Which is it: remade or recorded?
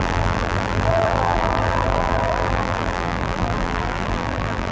remade